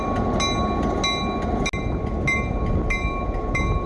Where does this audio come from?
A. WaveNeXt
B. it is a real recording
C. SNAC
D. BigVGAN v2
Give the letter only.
B